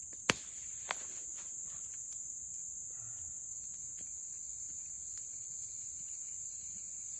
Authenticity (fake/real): real